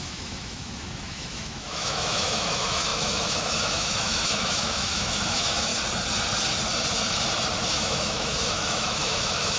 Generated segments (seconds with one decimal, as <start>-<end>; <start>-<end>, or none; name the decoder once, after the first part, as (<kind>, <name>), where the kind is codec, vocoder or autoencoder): 0.0-5.7 (autoencoder, DAC-VAE); 7.7-9.6